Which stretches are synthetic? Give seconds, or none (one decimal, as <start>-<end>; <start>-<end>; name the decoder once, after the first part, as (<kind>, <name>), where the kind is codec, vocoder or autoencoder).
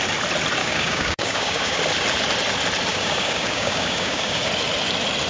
0.6-1.8 (codec, DAC); 2.9-4.5